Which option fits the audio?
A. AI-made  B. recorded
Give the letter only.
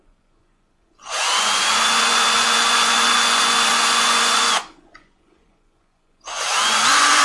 A